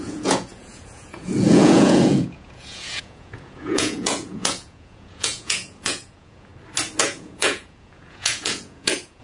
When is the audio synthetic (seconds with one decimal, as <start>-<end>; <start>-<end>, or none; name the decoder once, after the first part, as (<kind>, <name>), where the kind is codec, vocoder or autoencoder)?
0.0-6.5 (vocoder, Vocos); 7.0-9.2